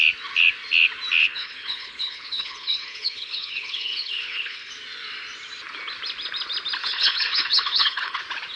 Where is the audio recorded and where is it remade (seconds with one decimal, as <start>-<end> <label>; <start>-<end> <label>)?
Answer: 0.0-1.2 recorded; 1.2-4.7 remade; 4.7-6.8 recorded; 6.8-8.2 remade; 8.2-8.6 recorded